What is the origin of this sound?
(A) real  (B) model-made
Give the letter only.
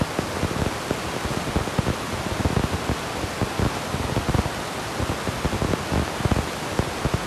A